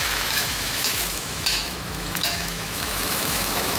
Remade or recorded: remade